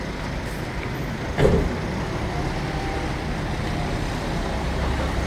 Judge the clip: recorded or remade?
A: recorded